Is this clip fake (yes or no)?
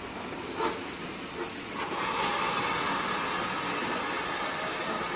no